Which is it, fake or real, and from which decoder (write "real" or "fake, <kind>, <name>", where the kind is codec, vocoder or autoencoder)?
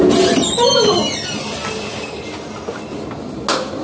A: real